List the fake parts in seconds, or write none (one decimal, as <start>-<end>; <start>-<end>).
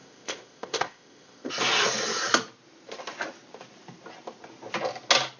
0.0-1.5